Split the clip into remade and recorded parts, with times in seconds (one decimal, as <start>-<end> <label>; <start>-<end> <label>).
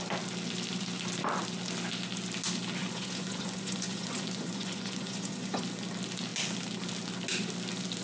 0.0-2.8 recorded; 2.8-5.6 remade; 5.6-8.0 recorded